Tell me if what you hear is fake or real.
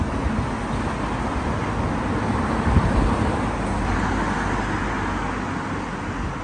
real